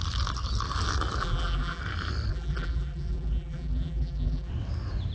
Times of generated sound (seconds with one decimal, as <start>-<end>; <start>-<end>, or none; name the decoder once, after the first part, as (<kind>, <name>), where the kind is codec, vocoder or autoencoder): 1.2-1.8 (vocoder, BigVGAN v2); 2.3-4.5